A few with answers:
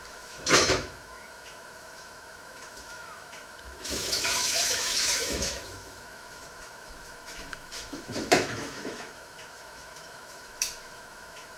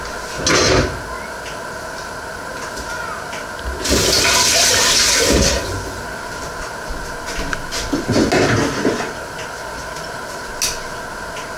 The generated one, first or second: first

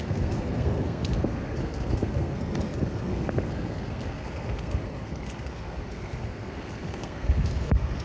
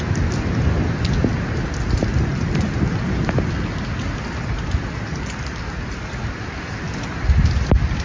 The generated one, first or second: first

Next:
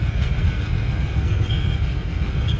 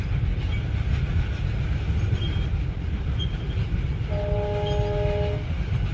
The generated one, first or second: first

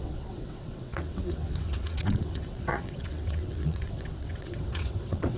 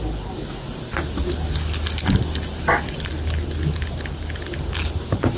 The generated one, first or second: first